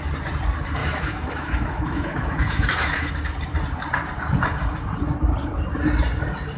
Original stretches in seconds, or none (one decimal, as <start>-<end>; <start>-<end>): 0.0-0.8; 3.1-6.6